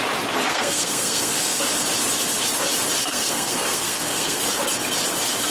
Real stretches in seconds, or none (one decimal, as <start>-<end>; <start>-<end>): 0.0-0.5; 1.6-3.0; 4.4-5.5